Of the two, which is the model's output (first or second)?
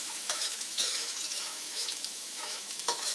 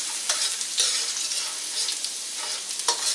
first